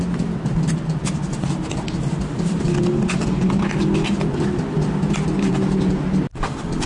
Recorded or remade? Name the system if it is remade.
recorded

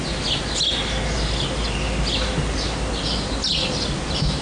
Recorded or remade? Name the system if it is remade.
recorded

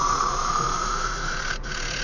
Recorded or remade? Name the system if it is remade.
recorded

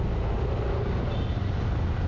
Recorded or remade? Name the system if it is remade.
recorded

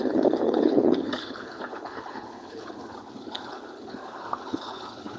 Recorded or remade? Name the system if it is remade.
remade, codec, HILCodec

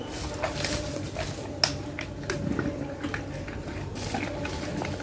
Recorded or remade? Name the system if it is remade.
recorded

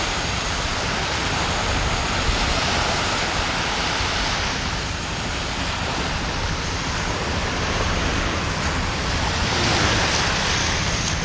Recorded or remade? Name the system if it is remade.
recorded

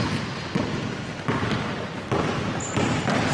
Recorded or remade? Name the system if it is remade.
recorded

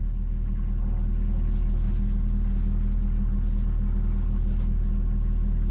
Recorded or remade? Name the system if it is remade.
recorded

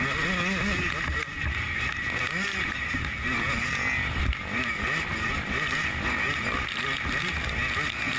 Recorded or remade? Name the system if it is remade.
recorded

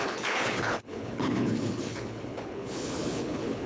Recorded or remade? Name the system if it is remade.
remade, codec, HILCodec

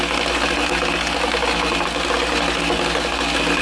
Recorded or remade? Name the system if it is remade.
recorded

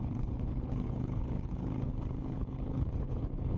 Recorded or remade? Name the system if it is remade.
remade, codec, HILCodec